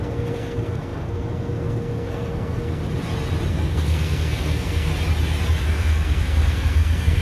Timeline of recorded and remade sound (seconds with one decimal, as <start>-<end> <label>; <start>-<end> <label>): 0.0-2.8 remade; 2.8-3.5 recorded; 3.5-4.9 remade; 4.9-5.6 recorded; 5.6-7.2 remade